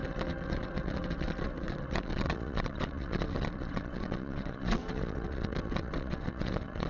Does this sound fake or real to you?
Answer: fake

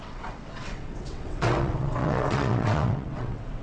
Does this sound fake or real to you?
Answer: fake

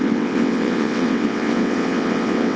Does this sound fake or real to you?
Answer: fake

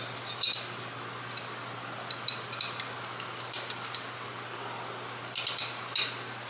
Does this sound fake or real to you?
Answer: real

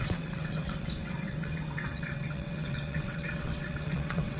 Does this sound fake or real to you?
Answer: fake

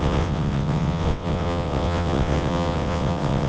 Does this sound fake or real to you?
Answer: fake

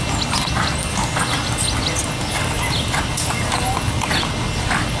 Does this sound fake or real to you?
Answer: real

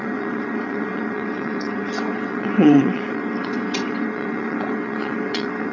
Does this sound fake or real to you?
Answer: fake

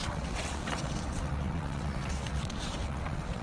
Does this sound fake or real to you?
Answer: fake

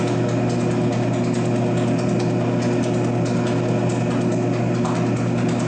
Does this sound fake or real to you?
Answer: real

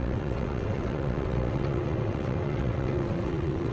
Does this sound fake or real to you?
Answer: fake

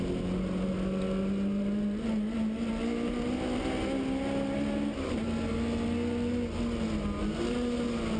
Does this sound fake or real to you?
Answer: real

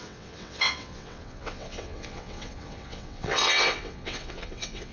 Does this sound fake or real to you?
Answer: fake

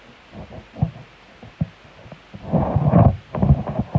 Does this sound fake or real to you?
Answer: real